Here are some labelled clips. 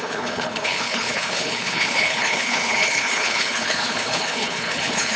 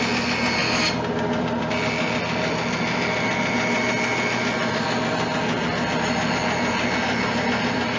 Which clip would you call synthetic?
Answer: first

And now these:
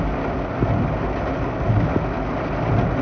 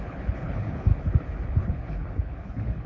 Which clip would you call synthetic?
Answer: second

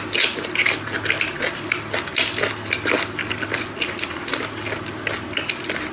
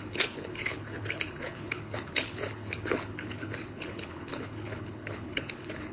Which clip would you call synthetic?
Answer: second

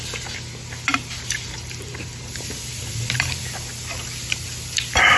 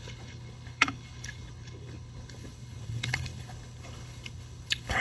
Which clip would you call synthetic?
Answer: second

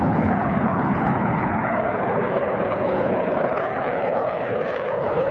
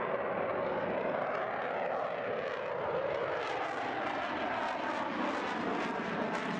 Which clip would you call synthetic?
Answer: first